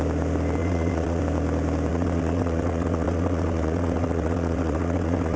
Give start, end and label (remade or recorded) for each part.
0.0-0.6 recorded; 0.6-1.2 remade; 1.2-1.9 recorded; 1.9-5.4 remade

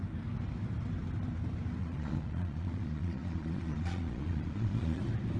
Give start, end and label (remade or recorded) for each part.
0.0-1.8 recorded; 1.8-5.0 remade; 5.0-5.4 recorded